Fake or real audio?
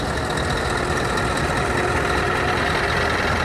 real